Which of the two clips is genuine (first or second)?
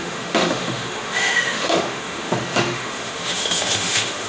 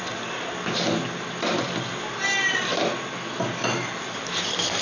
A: second